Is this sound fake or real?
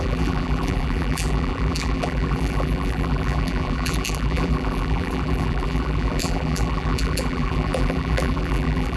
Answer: fake